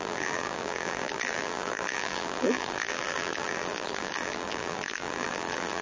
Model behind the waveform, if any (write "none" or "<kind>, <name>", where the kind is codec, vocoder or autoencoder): vocoder, BigVGAN v2